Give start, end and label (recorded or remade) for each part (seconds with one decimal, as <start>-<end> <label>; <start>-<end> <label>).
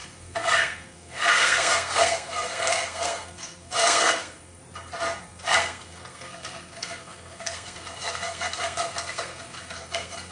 0.0-4.6 remade; 4.6-5.2 recorded; 5.2-10.3 remade